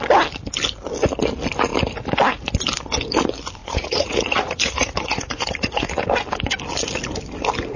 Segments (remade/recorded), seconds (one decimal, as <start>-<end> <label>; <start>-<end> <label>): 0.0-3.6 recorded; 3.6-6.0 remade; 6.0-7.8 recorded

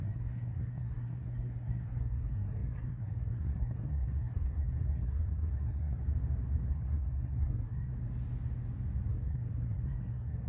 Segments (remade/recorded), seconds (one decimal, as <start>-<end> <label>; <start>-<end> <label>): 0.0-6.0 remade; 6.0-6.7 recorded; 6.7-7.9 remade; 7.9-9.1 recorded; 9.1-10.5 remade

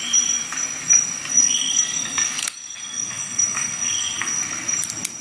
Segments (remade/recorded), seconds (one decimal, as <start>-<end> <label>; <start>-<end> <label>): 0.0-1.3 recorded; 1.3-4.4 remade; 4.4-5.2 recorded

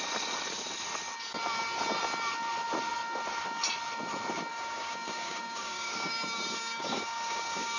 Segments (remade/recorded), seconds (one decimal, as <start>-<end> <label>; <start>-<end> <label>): 0.0-4.5 recorded; 4.5-7.8 remade

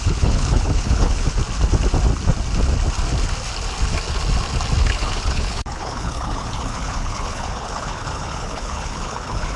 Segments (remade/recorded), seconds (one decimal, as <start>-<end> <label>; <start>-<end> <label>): 0.0-1.4 remade; 1.4-4.8 recorded; 4.8-9.6 remade